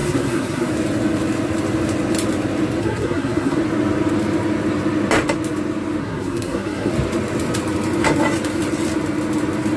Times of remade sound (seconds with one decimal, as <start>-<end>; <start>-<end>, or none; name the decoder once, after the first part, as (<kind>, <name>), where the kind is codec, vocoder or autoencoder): 0.0-0.7 (codec, SNAC); 2.8-3.6; 6.0-6.9

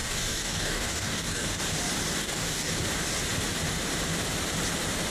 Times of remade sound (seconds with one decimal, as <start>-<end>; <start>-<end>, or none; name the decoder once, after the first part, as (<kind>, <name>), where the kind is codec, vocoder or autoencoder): 0.0-1.6 (codec, DAC); 2.2-2.7

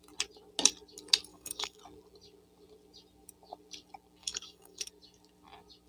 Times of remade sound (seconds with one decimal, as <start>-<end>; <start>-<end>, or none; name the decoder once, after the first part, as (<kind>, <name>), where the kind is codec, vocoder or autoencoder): 1.3-1.8 (codec, DAC); 4.2-4.9